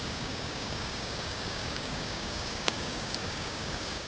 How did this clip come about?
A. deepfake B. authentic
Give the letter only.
A